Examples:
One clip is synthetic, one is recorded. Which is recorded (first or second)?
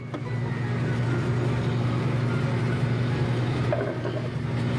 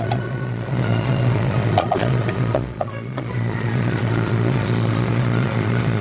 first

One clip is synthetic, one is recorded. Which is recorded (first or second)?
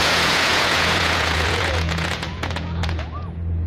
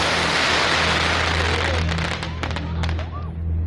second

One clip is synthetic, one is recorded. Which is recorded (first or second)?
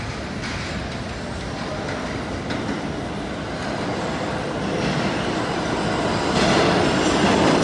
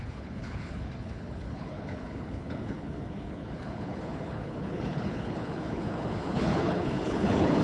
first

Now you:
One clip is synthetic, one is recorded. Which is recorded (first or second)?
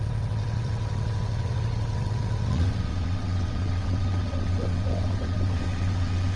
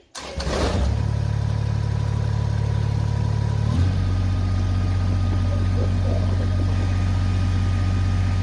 second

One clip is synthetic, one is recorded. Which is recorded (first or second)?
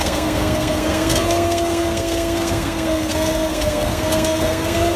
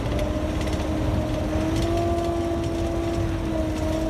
second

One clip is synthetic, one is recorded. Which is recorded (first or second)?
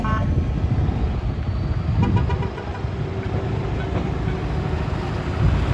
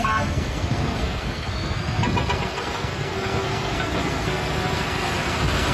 first